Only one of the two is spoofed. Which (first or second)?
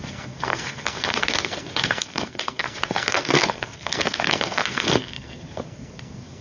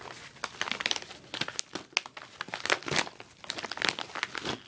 first